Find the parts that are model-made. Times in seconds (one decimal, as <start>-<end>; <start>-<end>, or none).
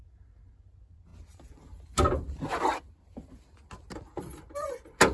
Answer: none